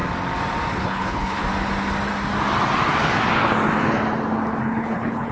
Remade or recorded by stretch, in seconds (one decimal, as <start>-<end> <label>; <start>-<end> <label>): 0.0-0.7 recorded; 0.7-1.4 remade; 1.4-4.6 recorded; 4.6-5.3 remade